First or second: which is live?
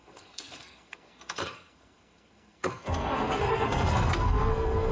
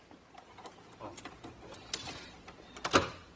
second